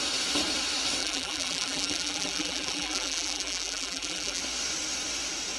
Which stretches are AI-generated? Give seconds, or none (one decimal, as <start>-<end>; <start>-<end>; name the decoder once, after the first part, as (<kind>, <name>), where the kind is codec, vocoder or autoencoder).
1.0-4.4 (vocoder, BigVGAN v2)